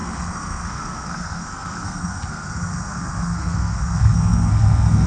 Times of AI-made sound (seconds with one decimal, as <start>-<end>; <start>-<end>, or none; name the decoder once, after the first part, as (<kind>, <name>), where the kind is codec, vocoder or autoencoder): 0.0-5.1 (codec, SNAC)